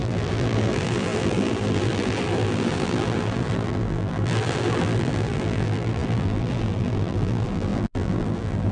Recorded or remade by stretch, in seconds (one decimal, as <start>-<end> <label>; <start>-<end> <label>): 0.0-8.7 remade